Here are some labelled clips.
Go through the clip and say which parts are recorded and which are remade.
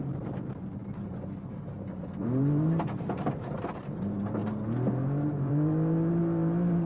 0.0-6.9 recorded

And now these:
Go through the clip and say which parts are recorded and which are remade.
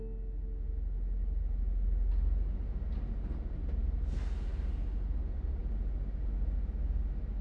0.0-7.4 recorded